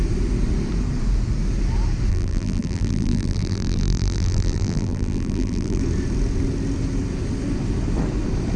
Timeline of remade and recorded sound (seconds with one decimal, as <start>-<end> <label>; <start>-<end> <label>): 0.0-2.1 recorded; 2.1-5.8 remade; 5.8-8.6 recorded